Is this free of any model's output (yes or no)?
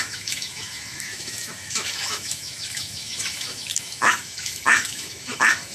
no